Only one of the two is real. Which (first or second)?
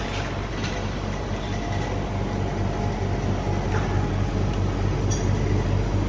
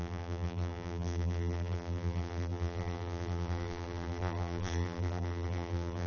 first